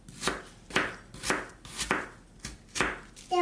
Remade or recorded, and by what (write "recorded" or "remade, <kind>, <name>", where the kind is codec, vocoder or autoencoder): recorded